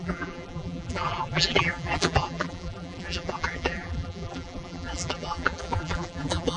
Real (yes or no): no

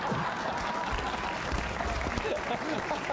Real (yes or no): yes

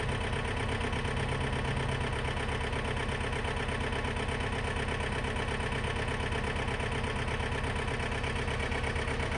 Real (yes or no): yes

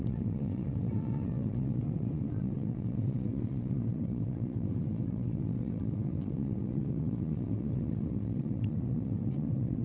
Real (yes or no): no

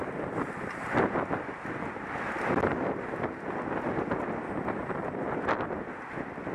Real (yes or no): yes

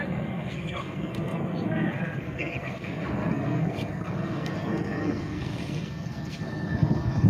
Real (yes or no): no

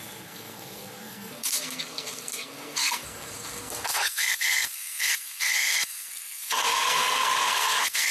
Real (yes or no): no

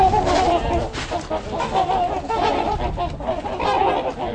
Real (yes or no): yes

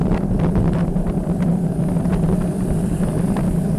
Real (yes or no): no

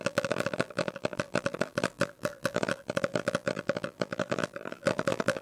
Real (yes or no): no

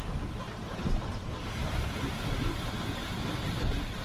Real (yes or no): no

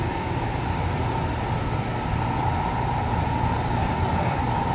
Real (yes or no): yes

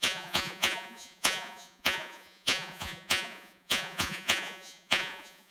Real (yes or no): no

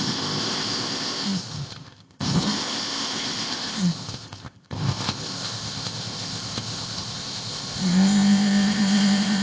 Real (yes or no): no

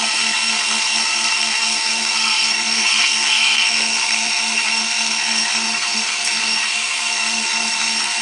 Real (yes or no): no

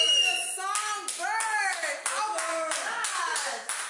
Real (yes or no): yes